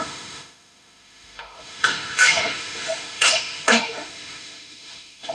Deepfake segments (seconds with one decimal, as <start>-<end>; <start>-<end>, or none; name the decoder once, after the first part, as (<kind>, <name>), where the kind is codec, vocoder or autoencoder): 0.0-5.3 (autoencoder, DAC-VAE)